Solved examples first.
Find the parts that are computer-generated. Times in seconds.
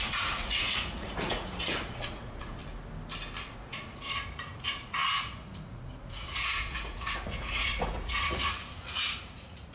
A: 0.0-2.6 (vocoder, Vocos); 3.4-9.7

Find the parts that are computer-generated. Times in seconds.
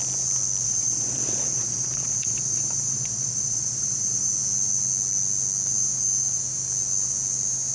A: 0.6-4.3 (vocoder, Vocos)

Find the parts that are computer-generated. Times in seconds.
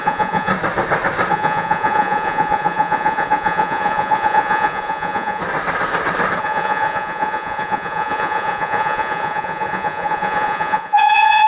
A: 0.0-0.5 (vocoder, Vocos); 1.3-5.4; 6.4-11.5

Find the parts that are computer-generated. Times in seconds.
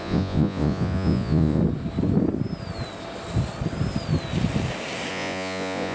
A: 0.0-1.6 (vocoder, Vocos); 5.1-5.9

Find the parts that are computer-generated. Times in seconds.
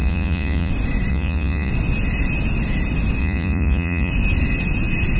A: 0.0-0.7 (vocoder, Vocos); 1.1-1.7; 3.2-4.1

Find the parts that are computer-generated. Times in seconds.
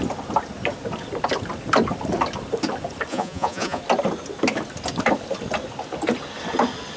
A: 3.1-3.8 (vocoder, Vocos)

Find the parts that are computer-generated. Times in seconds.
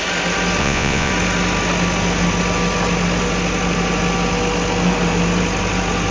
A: 0.6-1.1 (vocoder, Vocos)